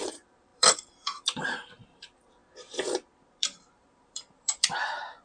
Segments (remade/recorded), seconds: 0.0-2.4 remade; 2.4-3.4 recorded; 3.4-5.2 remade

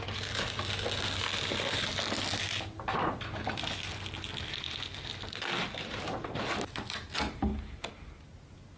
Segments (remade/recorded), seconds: 0.0-8.8 recorded

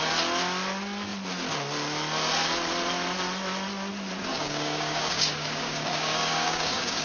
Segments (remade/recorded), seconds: 0.0-4.3 recorded; 4.3-7.0 remade

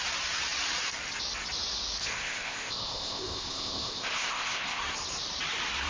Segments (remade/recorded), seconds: 0.0-2.0 recorded; 2.0-4.8 remade; 4.8-5.9 recorded

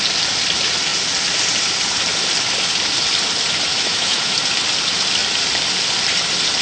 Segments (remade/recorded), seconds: 0.0-3.7 recorded; 3.7-4.4 remade; 4.4-6.6 recorded

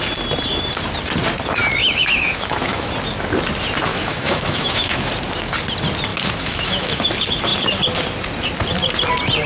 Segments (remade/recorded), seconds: 0.0-1.8 recorded; 1.8-2.9 remade; 2.9-3.9 recorded; 3.9-5.1 remade; 5.1-6.1 recorded; 6.1-7.0 remade; 7.0-9.5 recorded

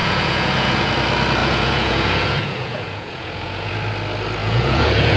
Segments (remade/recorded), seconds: 0.0-0.9 remade; 0.9-1.4 recorded; 1.4-3.7 remade; 3.7-4.4 recorded; 4.4-5.2 remade